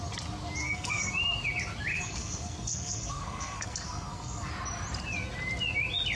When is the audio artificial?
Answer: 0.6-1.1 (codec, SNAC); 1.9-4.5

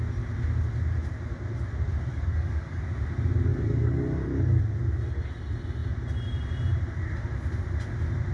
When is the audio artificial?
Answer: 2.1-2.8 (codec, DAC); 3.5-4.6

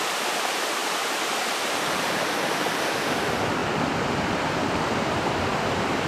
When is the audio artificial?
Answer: 0.8-2.3 (vocoder, BigVGAN v2); 3.6-5.3